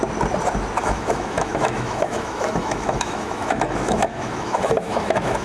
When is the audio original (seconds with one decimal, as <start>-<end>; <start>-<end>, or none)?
0.0-0.8